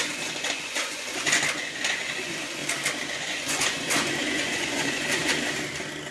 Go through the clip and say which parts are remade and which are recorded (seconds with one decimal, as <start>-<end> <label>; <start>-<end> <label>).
0.0-2.6 remade; 2.6-3.1 recorded; 3.1-5.3 remade; 5.3-6.1 recorded